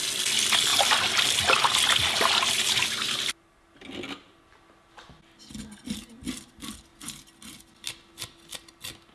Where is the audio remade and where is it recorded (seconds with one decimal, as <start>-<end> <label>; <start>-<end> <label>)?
0.0-9.1 recorded